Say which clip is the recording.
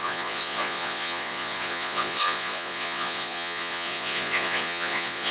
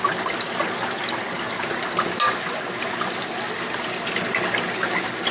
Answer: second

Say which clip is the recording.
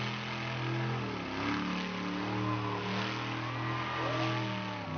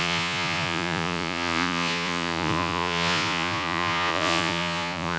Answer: first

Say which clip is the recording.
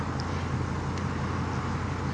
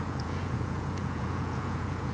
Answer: first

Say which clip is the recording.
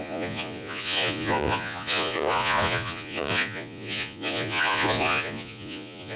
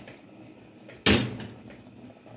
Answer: second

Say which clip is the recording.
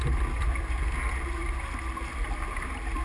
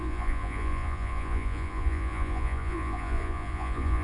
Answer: first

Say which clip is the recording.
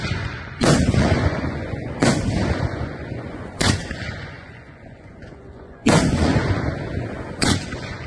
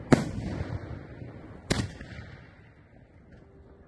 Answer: second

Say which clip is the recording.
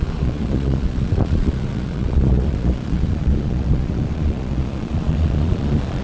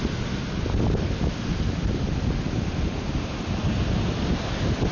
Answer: second